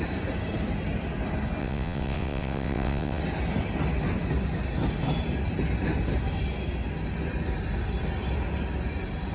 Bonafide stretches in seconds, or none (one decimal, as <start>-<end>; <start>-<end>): 0.0-1.6; 3.2-9.3